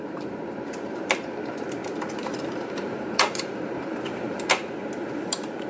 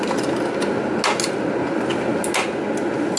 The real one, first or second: second